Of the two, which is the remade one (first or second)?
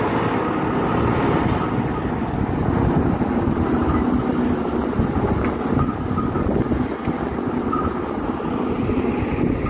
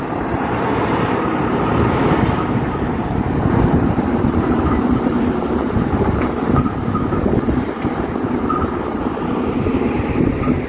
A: second